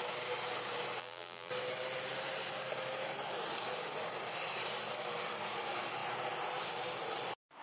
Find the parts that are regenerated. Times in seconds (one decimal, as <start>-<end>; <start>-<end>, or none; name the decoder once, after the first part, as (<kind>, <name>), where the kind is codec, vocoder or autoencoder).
1.0-1.5 (vocoder, BigVGAN v2)